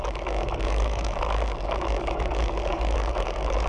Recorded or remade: remade